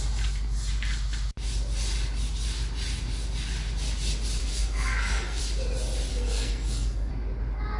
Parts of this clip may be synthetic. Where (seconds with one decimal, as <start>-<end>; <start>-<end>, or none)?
4.4-5.4; 6.1-7.1